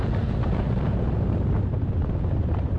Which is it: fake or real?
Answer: fake